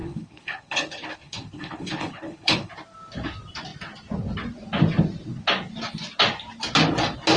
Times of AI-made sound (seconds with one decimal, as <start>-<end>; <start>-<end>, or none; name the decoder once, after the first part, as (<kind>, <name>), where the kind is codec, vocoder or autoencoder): 0.0-2.7 (codec, HILCodec)